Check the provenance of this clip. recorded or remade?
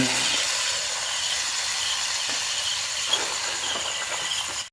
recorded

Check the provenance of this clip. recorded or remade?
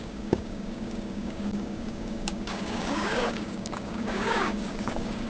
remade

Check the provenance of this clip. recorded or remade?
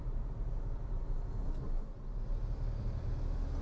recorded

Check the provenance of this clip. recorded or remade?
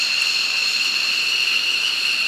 recorded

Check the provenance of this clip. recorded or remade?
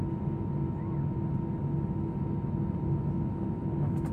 recorded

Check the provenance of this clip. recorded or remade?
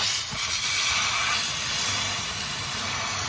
recorded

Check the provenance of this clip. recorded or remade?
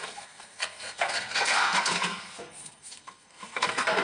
remade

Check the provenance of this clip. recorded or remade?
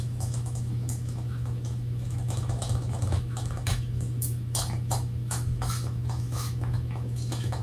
remade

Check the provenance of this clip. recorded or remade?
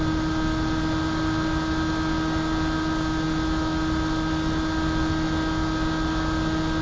recorded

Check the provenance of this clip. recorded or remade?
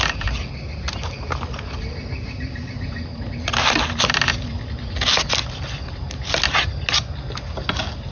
recorded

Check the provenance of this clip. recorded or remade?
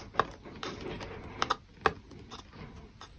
recorded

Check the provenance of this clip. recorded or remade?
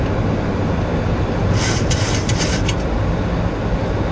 recorded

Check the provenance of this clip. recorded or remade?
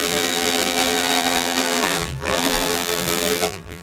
remade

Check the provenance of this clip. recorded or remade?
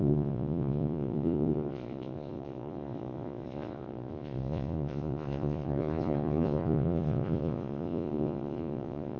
remade